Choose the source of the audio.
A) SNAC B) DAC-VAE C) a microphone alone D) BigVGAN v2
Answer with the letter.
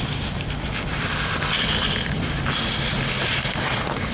C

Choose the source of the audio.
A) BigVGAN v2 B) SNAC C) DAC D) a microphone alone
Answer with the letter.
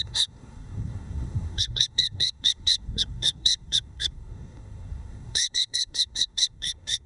B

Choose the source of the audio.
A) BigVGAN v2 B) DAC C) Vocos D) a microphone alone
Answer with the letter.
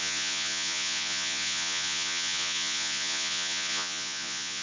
C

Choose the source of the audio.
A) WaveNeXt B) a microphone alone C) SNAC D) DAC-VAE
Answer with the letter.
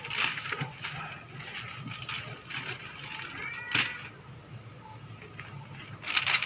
B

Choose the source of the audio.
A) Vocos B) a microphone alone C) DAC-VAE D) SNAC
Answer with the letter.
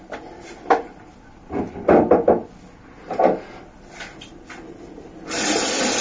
B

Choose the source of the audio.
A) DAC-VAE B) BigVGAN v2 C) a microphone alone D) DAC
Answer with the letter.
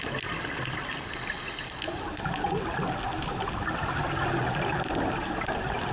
C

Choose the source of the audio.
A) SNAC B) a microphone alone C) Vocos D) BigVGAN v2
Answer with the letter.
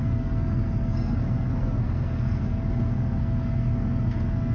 A